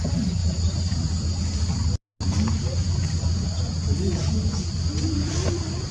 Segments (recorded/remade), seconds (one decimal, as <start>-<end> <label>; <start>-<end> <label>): 0.0-5.9 recorded